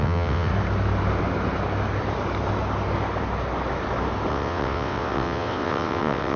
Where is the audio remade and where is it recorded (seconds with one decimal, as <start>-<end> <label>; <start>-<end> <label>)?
0.0-0.5 remade; 0.5-4.3 recorded; 4.3-6.4 remade